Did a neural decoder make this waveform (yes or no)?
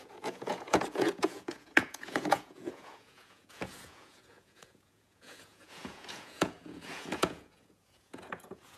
yes